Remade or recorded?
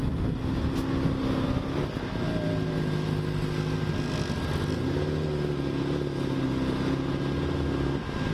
recorded